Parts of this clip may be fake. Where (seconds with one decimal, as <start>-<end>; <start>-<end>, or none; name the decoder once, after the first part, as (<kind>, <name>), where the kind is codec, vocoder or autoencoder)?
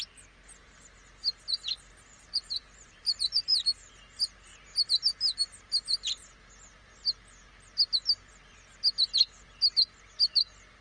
2.1-3.9 (vocoder, BigVGAN v2)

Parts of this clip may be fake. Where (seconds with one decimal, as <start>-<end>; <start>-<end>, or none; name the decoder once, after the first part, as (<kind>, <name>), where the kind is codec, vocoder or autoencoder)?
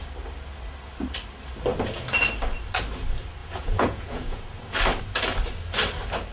3.4-4.4 (vocoder, Vocos)